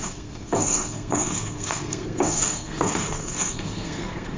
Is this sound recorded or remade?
remade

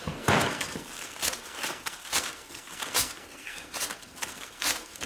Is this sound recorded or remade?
remade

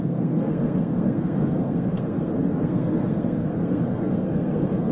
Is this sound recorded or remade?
remade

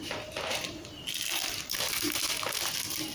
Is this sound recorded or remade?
recorded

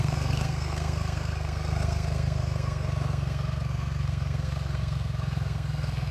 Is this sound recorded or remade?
remade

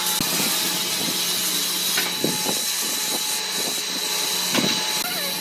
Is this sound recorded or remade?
recorded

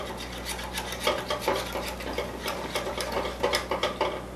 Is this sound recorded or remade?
recorded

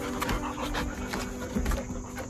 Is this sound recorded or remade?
recorded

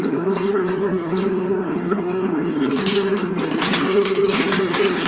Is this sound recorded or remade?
remade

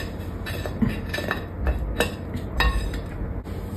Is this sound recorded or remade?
recorded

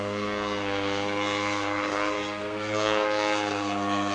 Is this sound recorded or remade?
remade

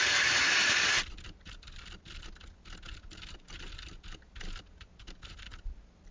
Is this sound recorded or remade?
recorded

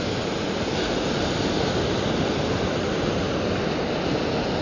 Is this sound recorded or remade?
recorded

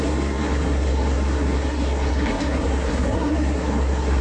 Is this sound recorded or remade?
remade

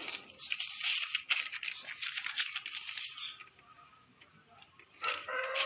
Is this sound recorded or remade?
recorded